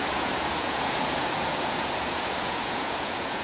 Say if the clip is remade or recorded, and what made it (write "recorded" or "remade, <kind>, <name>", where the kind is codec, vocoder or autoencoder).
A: remade, vocoder, Vocos